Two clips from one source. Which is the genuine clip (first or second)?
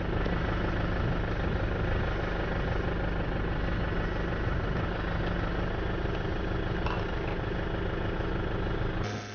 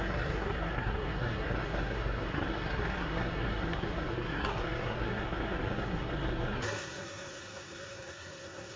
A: first